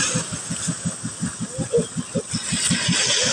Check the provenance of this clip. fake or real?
real